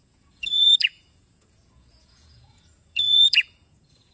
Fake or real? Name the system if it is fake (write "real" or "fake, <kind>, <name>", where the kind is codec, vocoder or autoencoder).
fake, vocoder, Vocos